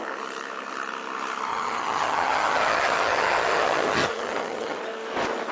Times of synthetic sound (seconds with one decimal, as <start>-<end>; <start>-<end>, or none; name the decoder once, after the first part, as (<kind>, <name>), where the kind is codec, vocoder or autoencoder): 1.5-4.8 (vocoder, HiFi-GAN)